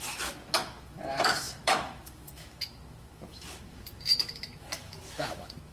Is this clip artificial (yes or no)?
yes